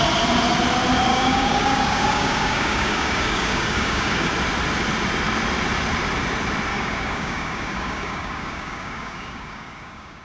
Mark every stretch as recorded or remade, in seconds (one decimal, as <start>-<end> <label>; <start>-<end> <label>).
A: 0.0-1.1 recorded; 1.1-4.3 remade; 4.3-6.7 recorded; 6.7-10.2 remade